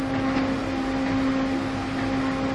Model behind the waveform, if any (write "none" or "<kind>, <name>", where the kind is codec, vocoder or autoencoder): none